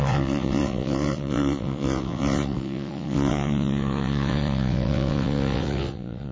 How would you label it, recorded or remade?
remade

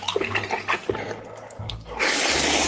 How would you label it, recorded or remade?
recorded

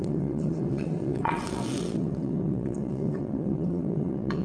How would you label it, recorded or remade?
remade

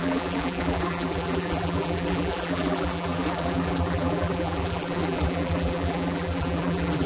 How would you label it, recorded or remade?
remade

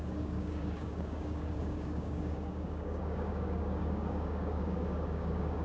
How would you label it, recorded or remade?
remade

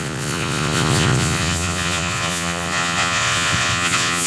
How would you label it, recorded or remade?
remade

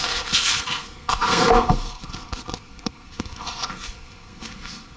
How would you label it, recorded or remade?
remade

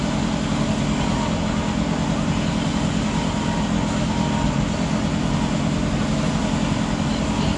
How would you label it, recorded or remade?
recorded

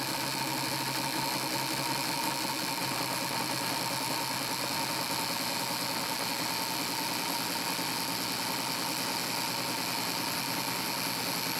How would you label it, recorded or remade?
recorded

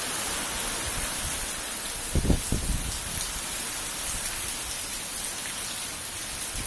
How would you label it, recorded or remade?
recorded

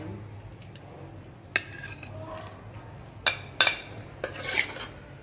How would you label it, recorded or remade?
recorded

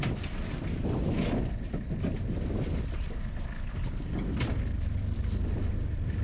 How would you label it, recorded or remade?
recorded